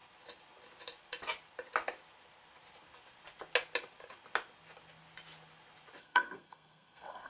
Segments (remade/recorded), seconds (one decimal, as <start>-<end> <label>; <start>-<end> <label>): 0.0-6.0 recorded; 6.0-7.3 remade